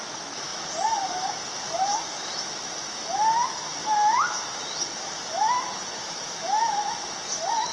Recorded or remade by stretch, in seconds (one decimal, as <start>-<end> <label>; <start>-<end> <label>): 0.0-7.7 remade